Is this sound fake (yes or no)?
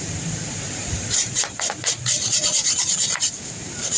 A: yes